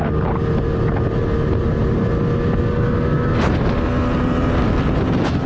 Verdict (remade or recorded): recorded